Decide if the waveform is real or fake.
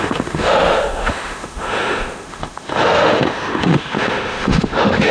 fake